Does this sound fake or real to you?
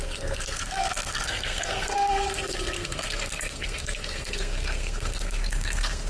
fake